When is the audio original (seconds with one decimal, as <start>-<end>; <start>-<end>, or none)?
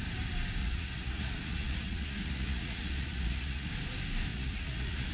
0.0-0.6; 3.7-4.3